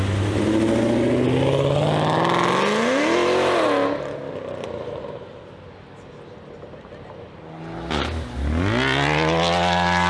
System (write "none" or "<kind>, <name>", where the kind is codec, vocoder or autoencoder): none